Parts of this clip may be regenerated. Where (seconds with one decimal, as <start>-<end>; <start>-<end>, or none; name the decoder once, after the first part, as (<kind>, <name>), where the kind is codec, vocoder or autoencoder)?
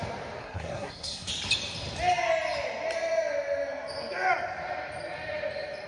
0.4-1.3 (codec, SNAC)